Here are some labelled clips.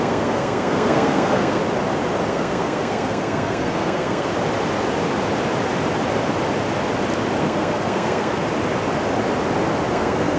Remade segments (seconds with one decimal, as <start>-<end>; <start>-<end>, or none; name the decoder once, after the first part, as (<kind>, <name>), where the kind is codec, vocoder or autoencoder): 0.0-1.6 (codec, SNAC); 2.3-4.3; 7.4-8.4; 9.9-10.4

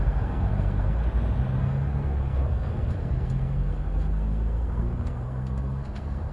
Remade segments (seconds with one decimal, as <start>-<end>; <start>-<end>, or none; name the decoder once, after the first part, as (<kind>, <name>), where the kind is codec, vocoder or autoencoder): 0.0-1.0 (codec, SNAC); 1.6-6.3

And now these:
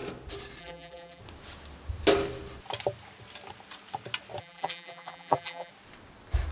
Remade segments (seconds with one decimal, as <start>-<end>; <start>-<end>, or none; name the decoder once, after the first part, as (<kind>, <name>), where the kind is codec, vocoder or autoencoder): 0.6-1.2 (vocoder, BigVGAN v2); 4.4-5.7